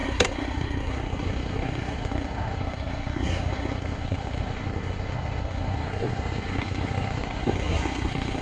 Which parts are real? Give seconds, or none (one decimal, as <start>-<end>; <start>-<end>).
none